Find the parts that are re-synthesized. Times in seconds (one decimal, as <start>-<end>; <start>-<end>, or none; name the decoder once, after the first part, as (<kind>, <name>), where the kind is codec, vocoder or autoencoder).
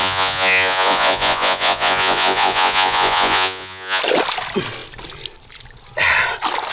0.0-4.0 (vocoder, Vocos)